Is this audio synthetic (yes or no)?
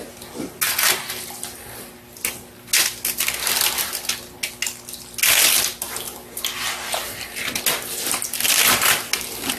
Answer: no